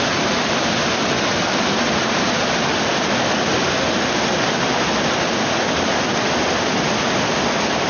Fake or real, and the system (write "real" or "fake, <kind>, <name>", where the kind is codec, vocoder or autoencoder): real